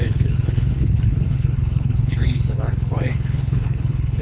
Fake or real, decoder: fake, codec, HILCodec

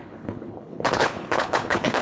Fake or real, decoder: fake, codec, HILCodec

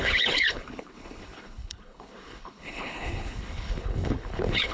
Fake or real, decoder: fake, codec, HILCodec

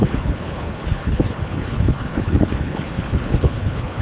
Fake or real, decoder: fake, codec, HILCodec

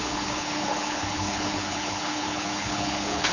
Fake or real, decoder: fake, codec, HILCodec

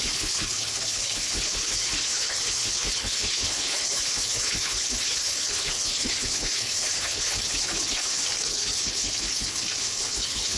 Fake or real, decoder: fake, codec, HILCodec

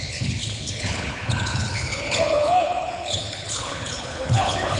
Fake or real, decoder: fake, codec, HILCodec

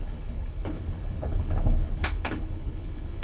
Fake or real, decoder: fake, codec, HILCodec